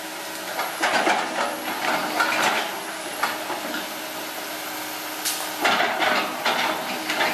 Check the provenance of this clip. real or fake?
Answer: real